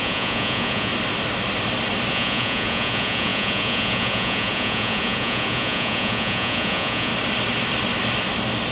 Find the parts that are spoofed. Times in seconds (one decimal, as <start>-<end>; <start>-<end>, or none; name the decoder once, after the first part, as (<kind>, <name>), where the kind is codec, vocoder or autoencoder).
0.0-0.9 (vocoder, Vocos); 2.1-7.1